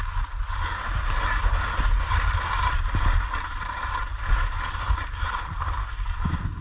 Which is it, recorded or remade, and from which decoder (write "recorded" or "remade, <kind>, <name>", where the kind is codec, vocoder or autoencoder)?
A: recorded